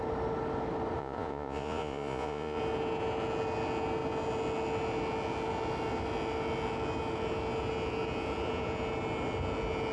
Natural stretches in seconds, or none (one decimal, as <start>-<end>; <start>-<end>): 0.0-1.0; 2.6-9.9